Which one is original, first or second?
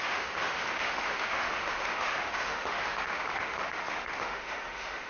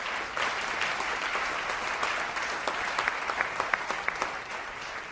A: second